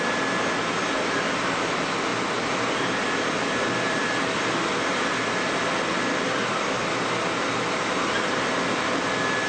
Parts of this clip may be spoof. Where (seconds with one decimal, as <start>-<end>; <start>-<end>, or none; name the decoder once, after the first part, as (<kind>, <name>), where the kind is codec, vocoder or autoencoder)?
2.1-2.7 (vocoder, BigVGAN v2)